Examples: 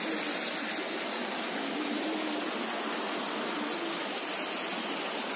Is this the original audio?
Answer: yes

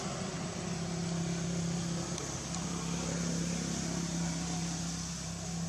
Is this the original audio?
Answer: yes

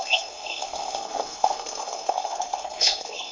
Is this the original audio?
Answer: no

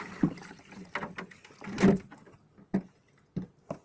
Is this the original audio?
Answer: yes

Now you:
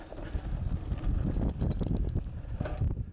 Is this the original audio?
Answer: yes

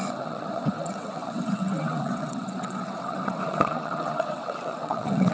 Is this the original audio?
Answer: no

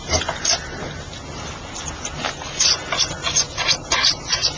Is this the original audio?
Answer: yes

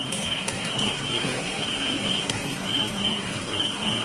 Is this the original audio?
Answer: no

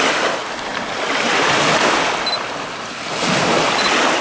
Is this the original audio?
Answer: yes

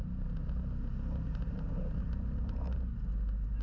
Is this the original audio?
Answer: yes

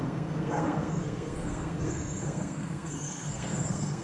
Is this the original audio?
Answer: no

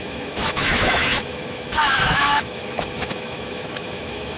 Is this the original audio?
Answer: no